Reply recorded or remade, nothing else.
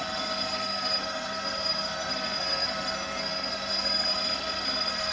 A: remade